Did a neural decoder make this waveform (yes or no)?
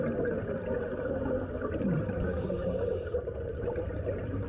yes